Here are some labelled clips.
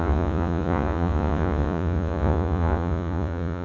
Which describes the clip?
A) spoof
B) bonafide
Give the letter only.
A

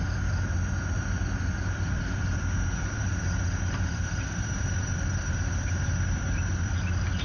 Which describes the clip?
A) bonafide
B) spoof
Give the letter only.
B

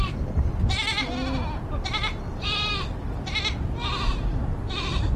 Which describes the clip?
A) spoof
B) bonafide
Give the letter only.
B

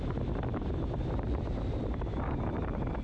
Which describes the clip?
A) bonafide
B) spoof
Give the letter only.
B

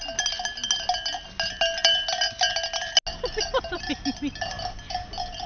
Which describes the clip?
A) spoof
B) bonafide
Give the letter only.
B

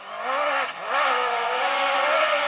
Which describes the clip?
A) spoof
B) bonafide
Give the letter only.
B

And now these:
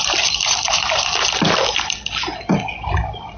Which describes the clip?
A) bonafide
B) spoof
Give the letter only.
A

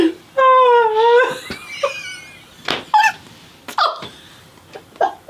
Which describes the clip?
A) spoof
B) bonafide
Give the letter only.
B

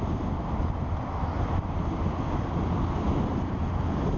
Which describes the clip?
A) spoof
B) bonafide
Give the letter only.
B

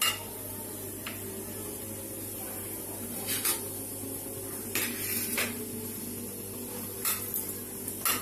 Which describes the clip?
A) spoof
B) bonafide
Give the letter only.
B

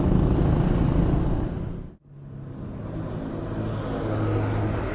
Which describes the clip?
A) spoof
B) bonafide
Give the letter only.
B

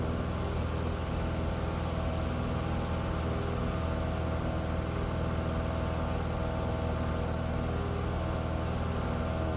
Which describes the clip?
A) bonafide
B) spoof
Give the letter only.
A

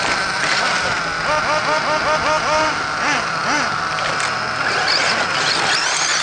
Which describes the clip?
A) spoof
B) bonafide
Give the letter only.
B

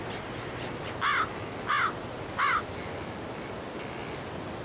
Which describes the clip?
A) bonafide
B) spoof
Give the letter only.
A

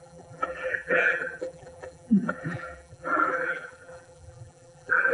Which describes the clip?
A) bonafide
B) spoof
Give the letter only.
B